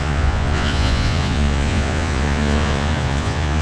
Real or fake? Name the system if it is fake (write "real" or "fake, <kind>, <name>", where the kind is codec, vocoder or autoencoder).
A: fake, vocoder, Vocos